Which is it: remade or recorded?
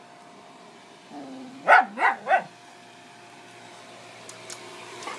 remade